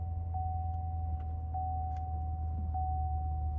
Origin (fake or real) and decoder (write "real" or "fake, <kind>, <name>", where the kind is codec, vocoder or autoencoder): real